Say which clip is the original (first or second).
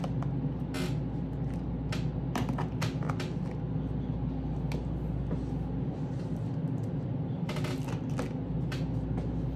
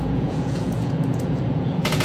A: first